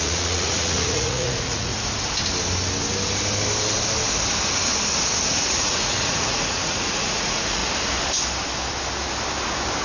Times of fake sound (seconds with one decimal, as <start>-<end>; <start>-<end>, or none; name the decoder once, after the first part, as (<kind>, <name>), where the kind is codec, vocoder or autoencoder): 0.0-1.7 (vocoder, Vocos); 5.3-7.6